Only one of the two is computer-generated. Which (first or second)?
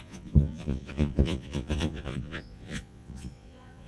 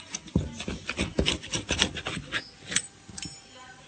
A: first